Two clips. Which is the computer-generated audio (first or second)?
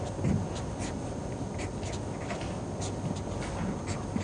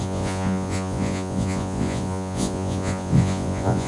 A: second